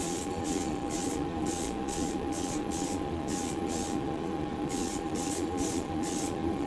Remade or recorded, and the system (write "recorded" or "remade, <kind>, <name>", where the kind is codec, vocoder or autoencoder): remade, vocoder, Vocos